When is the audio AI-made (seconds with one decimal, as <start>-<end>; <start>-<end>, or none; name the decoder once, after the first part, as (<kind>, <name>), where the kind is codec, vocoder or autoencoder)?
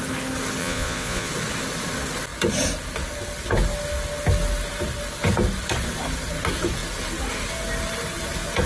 0.6-1.3 (vocoder, Vocos)